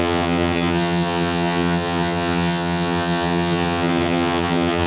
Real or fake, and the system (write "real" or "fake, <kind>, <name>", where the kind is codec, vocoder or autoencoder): fake, vocoder, HiFi-GAN